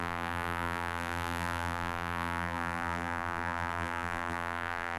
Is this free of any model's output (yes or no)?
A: no